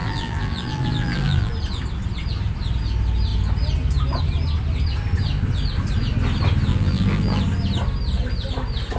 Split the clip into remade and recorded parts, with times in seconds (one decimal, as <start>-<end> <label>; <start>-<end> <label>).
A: 0.0-1.5 remade; 1.5-6.7 recorded; 6.7-7.4 remade; 7.4-9.0 recorded